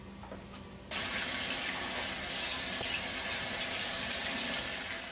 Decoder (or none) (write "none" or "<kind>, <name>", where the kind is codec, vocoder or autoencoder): none